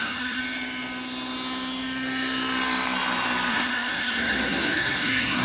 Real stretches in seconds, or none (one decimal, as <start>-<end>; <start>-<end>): 0.4-3.5